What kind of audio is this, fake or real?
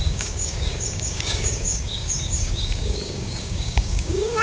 fake